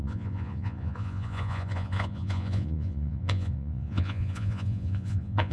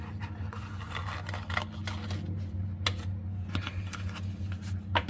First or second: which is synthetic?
first